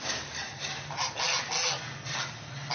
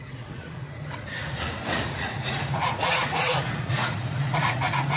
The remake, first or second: second